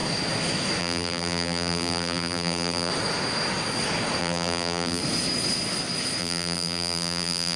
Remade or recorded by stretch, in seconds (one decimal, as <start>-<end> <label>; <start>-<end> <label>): 0.0-0.8 recorded; 0.8-2.9 remade; 2.9-4.2 recorded; 4.2-5.0 remade; 5.0-6.2 recorded; 6.2-7.6 remade